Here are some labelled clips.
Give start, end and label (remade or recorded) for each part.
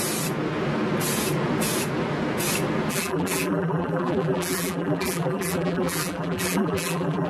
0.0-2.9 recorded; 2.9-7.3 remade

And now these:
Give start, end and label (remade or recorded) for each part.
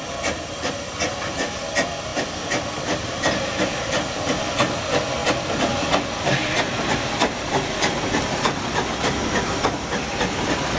0.0-2.1 recorded; 2.1-4.5 remade; 4.5-5.2 recorded; 5.2-9.7 remade; 9.7-10.8 recorded